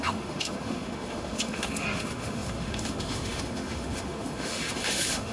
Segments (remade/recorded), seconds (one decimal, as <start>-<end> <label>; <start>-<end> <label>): 0.0-5.3 remade